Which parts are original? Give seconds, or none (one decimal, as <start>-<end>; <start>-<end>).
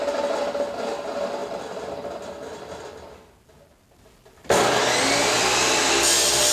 0.0-6.5